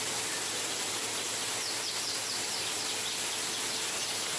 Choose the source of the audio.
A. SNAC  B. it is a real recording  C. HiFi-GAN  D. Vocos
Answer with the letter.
B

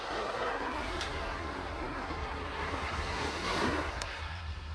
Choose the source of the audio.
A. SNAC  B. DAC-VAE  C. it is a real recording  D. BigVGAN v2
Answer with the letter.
A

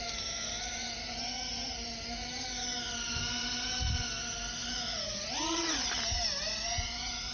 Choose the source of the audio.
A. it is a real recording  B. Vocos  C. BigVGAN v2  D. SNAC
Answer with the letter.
A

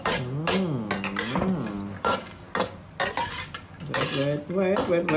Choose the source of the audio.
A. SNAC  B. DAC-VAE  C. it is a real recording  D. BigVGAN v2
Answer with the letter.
C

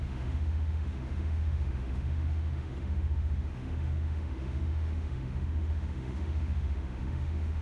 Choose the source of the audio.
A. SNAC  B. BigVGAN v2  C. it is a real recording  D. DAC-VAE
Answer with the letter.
D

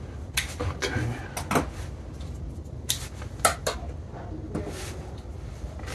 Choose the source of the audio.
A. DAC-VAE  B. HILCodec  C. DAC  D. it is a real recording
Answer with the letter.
D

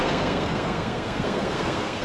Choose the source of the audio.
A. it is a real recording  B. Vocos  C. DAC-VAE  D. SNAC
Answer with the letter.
D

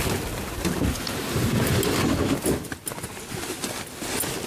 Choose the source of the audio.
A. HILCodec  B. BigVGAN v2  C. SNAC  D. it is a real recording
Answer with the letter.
D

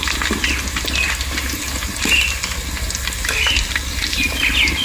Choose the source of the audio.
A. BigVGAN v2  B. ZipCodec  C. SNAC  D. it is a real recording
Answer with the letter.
D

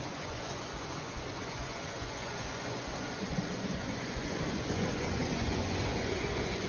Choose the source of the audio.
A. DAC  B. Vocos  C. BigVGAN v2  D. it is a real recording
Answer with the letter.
B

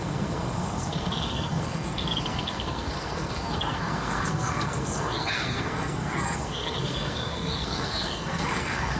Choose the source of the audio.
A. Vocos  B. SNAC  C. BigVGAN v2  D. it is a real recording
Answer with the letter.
B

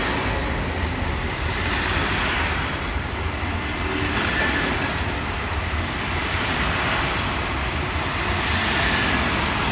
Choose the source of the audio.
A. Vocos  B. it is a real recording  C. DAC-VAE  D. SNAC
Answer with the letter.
B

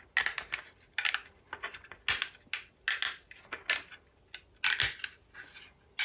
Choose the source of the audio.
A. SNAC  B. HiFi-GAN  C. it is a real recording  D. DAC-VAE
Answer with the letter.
C